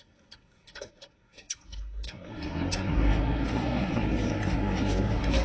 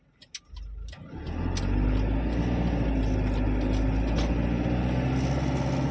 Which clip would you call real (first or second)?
second